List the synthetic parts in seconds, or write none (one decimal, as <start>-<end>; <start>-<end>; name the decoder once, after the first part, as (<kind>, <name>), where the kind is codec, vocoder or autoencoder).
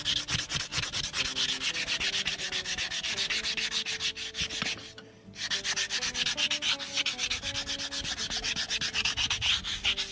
none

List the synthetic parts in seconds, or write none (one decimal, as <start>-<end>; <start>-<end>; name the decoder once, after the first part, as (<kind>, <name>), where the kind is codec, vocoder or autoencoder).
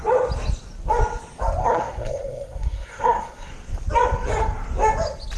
1.6-3.5 (codec, SNAC)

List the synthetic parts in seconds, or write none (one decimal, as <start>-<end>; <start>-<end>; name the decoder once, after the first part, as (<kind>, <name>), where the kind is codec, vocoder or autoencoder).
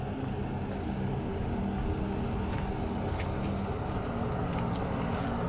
none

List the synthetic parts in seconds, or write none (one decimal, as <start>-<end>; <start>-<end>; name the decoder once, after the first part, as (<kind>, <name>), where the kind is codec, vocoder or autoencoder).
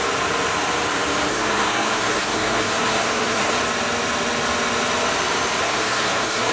1.3-3.6 (codec, SNAC); 5.6-6.5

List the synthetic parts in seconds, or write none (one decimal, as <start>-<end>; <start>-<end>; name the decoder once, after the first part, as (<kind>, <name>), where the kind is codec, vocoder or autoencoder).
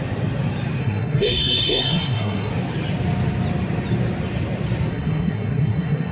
0.8-2.5 (codec, SNAC); 4.9-6.1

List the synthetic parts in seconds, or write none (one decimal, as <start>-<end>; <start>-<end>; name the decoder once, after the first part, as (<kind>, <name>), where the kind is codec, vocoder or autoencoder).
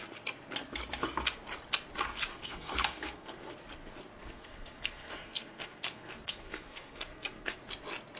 2.3-3.5 (codec, SNAC); 4.2-7.6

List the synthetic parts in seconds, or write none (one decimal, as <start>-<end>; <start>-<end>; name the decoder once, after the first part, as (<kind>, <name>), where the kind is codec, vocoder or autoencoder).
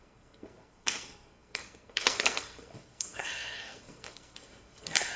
0.0-5.2 (codec, SNAC)